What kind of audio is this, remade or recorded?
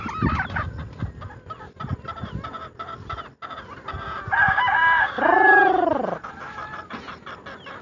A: recorded